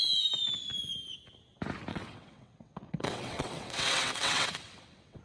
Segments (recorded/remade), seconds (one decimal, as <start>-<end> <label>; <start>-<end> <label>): 0.0-1.9 recorded; 1.9-5.2 remade